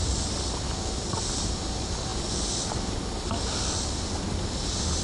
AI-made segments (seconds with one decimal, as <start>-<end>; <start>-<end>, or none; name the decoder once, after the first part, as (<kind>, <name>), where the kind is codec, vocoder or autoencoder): none